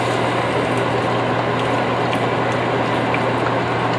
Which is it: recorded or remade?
recorded